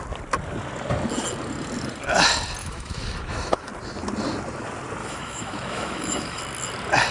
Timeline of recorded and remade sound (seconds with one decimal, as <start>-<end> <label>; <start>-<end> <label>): 0.0-2.6 recorded; 2.6-3.7 remade; 3.7-5.0 recorded; 5.0-6.4 remade; 6.4-7.1 recorded